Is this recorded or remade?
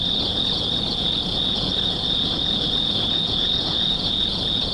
remade